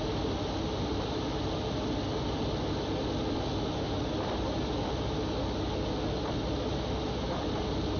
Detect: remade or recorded recorded